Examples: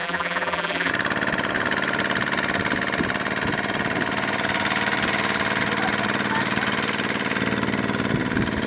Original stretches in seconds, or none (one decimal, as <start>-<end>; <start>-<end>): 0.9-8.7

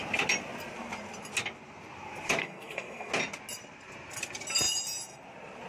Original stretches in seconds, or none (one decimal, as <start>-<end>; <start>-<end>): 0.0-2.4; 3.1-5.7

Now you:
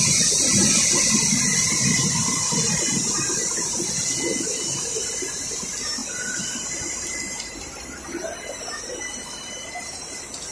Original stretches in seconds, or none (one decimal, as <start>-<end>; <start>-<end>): 0.0-10.5